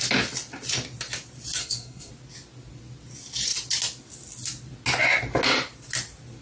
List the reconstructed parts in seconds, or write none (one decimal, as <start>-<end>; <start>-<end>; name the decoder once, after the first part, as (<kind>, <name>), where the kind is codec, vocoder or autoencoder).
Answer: 1.6-2.1 (codec, SNAC)